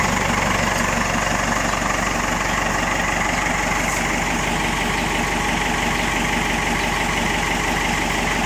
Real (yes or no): yes